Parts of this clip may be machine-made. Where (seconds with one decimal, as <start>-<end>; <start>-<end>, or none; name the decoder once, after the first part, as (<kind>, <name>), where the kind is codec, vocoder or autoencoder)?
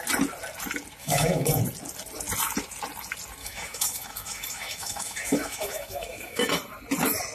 1.0-1.6 (autoencoder, DAC-VAE); 3.4-6.5